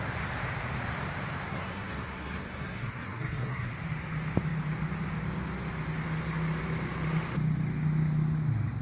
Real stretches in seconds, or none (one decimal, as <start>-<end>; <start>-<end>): 0.0-1.4; 3.7-8.8